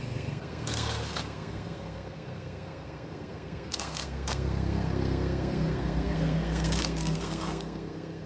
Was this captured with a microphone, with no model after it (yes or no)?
no